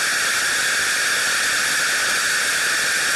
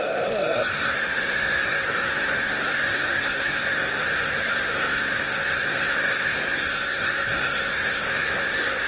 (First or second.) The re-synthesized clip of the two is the second